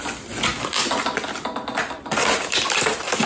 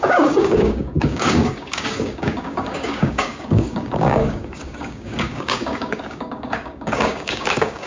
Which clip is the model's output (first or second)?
second